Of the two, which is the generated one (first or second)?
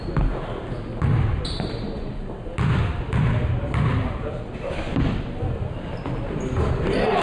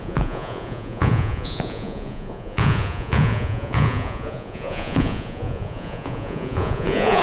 second